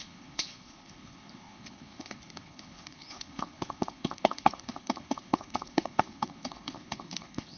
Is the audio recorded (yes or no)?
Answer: no